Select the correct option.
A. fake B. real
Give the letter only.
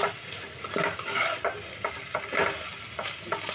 B